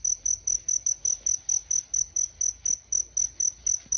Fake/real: real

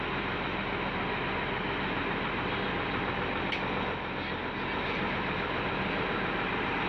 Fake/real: real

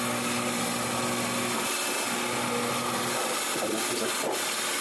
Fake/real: real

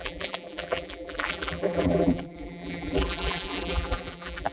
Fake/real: fake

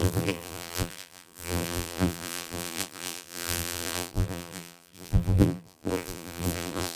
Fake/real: fake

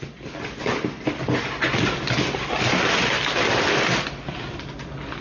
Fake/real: real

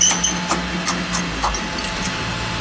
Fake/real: real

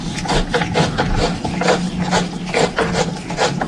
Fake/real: real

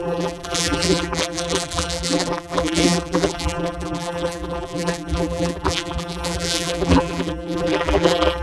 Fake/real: fake